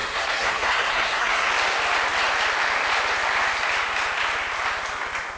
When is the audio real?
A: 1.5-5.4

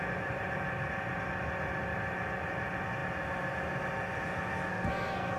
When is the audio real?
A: 0.0-4.7

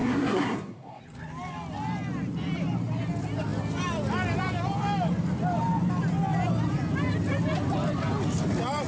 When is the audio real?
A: 1.0-8.9

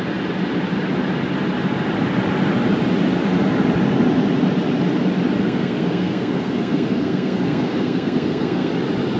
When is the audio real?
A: 0.0-5.4; 8.7-9.2

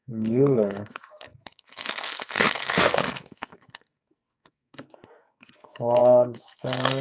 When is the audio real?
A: none

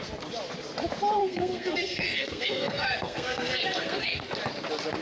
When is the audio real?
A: 0.0-1.2; 4.2-5.0

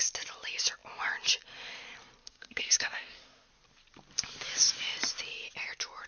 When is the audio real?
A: 0.0-2.2; 3.5-6.1

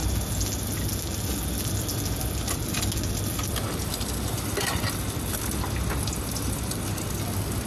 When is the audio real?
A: 0.0-7.7